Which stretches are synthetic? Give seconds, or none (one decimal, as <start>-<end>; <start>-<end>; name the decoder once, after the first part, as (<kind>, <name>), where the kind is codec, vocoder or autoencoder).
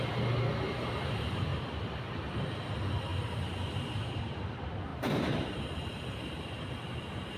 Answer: 4.9-5.6 (vocoder, BigVGAN v2)